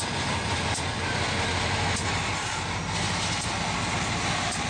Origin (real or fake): real